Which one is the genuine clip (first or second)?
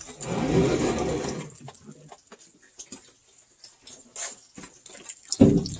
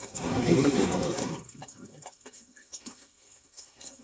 first